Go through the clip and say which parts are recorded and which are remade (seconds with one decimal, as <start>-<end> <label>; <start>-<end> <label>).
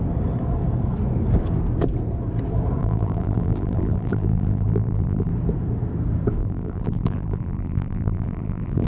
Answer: 0.0-2.8 recorded; 2.8-5.3 remade; 5.3-6.4 recorded; 6.4-8.9 remade